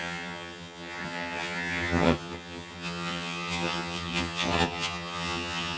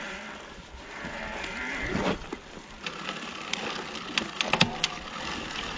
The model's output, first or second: first